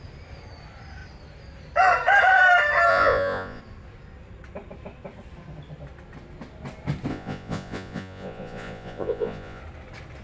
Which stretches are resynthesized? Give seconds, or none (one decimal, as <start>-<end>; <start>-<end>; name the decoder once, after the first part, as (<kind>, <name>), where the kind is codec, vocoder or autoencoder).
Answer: 2.9-3.6 (vocoder, Vocos); 7.1-9.6